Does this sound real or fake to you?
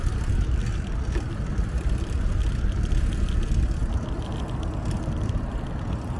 real